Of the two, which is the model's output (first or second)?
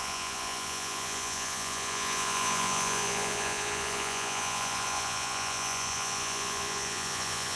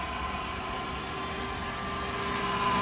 first